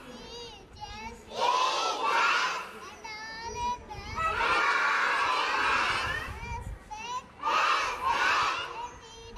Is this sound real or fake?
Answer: real